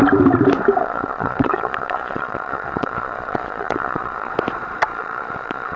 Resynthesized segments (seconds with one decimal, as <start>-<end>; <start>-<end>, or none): 0.8-4.3; 4.9-5.8